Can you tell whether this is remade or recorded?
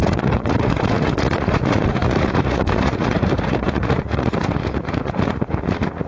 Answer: remade